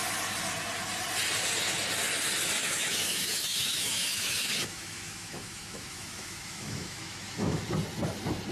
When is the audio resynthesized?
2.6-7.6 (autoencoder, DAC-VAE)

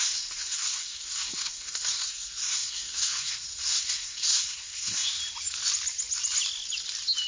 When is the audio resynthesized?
0.0-5.2 (codec, SNAC)